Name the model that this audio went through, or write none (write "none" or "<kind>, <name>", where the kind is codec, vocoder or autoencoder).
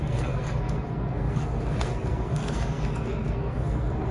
codec, SNAC